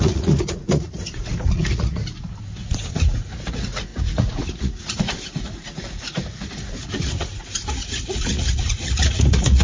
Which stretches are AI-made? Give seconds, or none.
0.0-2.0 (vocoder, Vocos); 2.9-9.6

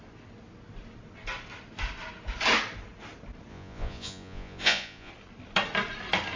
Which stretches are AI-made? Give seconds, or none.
3.5-5.1 (vocoder, Vocos)

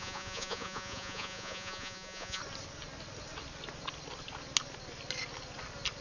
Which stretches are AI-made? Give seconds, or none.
0.0-2.4 (vocoder, Vocos)

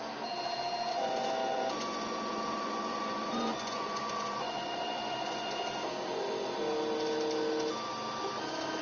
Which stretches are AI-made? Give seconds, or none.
0.9-5.6 (vocoder, Vocos)

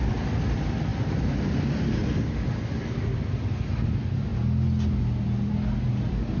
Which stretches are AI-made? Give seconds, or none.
none

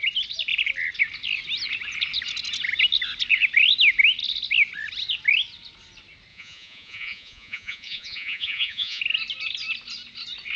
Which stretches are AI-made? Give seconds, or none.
6.3-9.0 (vocoder, Vocos)